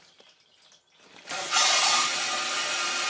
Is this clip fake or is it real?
real